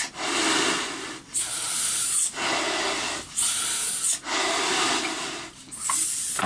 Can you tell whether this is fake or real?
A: real